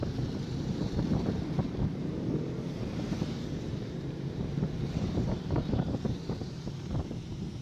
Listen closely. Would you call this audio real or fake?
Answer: fake